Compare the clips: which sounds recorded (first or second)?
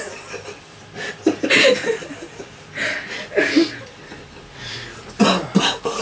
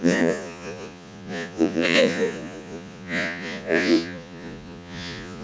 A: first